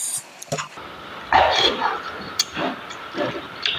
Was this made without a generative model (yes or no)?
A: yes